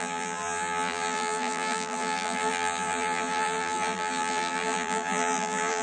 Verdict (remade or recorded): remade